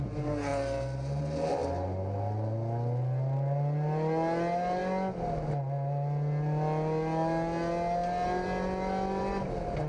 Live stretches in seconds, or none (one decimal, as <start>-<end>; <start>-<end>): 0.0-9.9